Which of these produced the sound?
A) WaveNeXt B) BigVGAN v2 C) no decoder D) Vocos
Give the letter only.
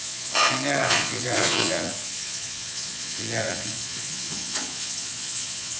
D